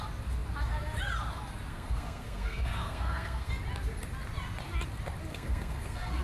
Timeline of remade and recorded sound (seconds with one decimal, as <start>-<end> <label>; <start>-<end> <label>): 0.0-1.7 recorded; 1.7-3.5 remade; 3.5-5.3 recorded; 5.3-6.2 remade